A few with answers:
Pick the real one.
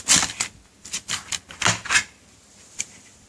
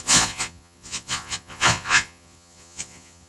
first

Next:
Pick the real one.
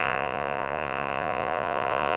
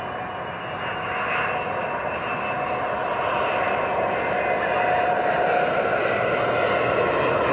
second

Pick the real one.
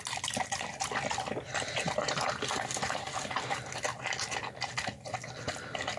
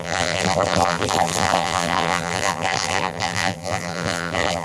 first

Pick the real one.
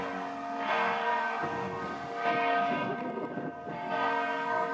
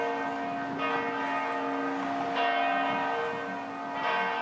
second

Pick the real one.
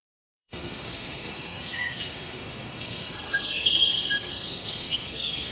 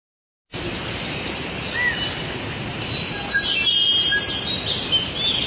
second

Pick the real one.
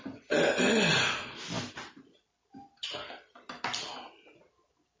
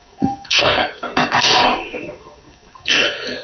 first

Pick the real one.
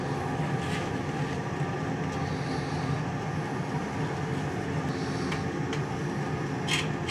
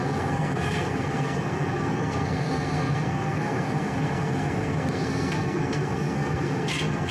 first